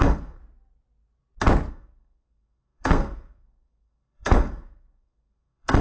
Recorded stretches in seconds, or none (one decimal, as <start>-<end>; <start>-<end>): 0.4-1.7